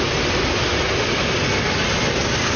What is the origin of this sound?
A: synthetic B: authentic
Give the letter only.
B